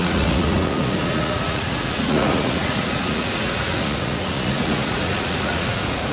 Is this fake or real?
fake